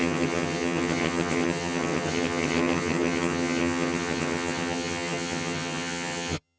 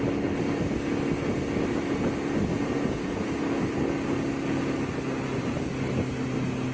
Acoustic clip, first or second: second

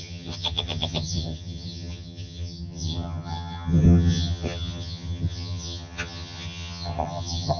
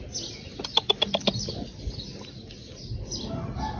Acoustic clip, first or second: second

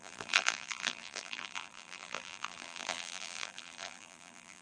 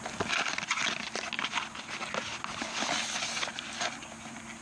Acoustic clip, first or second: second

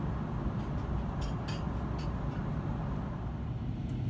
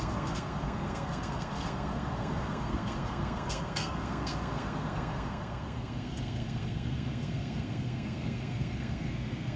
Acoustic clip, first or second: first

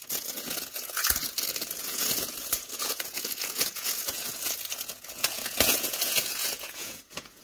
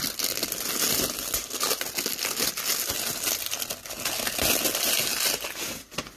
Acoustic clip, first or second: second